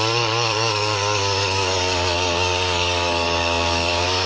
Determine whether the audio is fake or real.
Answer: fake